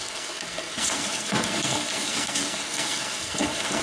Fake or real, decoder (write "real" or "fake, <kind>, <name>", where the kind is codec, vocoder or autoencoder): fake, codec, SNAC